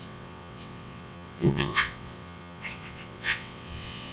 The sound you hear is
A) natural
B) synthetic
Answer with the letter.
B